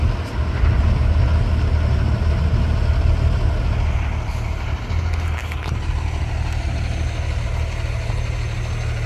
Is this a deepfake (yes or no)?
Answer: no